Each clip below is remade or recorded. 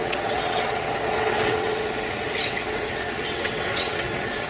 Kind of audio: remade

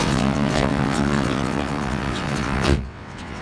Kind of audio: remade